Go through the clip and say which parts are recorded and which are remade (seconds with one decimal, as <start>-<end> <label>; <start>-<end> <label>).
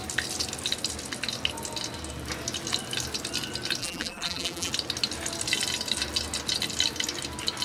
0.0-3.8 recorded; 3.8-4.7 remade; 4.7-7.6 recorded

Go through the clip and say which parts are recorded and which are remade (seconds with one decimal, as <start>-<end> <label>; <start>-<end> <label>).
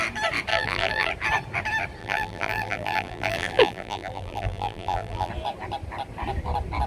0.0-0.5 recorded; 0.5-1.1 remade; 1.1-2.0 recorded; 2.0-5.3 remade; 5.3-6.9 recorded